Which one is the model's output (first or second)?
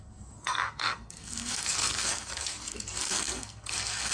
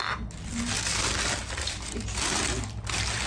first